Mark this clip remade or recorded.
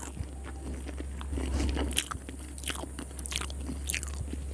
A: recorded